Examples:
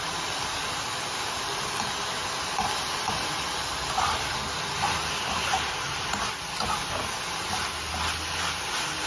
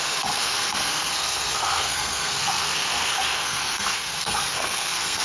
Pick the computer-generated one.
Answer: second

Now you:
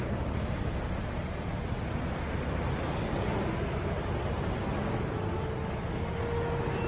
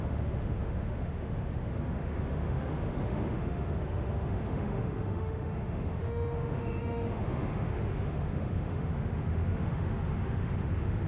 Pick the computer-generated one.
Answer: second